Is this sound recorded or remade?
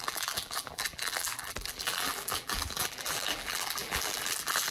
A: remade